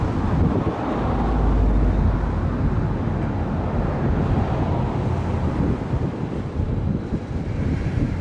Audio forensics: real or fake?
real